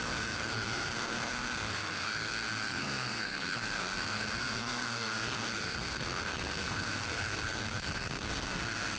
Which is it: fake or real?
fake